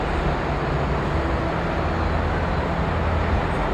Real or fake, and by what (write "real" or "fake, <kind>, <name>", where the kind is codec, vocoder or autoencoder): real